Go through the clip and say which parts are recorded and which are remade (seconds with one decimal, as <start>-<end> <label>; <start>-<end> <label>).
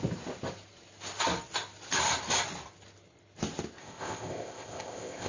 0.0-3.8 recorded; 3.8-5.3 remade